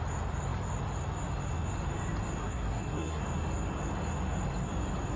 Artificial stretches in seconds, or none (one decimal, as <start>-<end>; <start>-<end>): 2.4-3.2